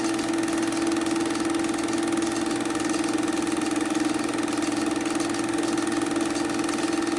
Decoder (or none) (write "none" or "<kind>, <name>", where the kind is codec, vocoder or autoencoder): none